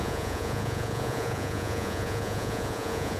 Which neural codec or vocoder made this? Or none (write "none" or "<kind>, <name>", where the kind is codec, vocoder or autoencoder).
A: vocoder, Vocos